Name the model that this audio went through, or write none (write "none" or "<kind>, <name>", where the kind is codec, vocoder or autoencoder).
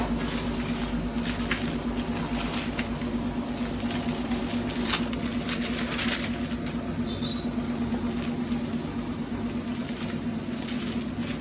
none